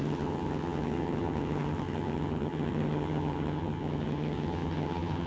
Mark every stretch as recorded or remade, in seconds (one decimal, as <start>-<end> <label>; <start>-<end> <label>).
0.0-5.3 remade